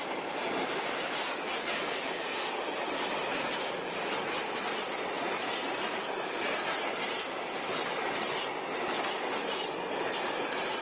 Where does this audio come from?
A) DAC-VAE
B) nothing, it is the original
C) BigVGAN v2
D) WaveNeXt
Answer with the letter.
B